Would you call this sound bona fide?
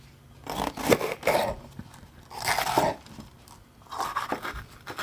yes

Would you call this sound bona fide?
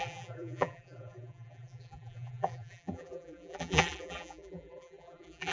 no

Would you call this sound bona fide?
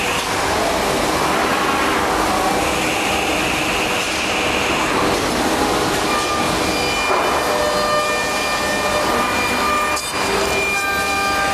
yes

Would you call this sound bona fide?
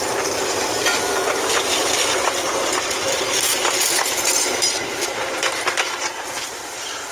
no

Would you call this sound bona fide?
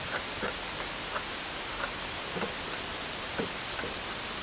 yes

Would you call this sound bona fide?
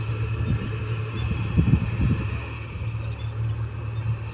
yes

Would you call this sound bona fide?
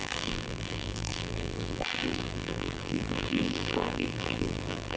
no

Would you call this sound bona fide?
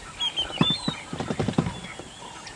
no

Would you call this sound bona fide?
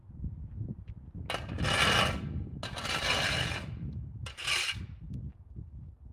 yes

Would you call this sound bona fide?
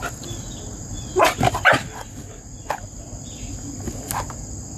yes